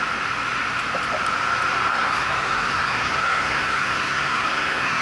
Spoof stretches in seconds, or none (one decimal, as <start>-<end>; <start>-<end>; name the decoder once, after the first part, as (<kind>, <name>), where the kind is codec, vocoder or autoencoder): 1.9-5.0 (codec, SNAC)